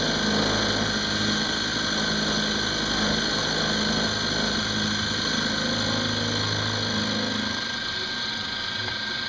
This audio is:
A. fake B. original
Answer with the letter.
B